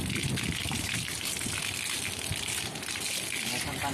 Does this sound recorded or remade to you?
recorded